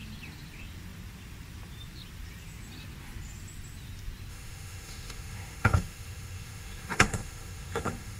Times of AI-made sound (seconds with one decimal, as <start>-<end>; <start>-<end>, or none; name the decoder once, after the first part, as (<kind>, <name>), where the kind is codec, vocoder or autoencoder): 4.3-8.2 (autoencoder, DAC-VAE)